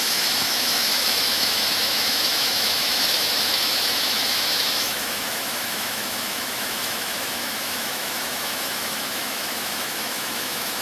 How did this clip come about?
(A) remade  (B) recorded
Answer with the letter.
A